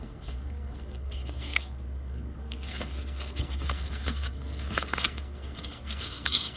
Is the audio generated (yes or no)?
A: yes